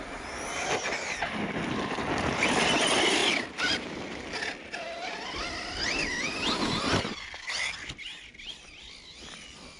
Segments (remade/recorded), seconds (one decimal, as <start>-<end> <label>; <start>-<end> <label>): 0.0-9.8 recorded